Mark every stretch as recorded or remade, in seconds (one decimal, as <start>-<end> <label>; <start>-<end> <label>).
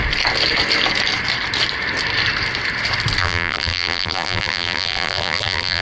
0.0-3.2 recorded; 3.2-5.8 remade